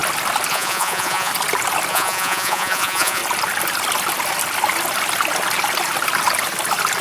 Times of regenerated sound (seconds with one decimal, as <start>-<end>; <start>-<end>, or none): 0.5-1.3; 1.9-3.2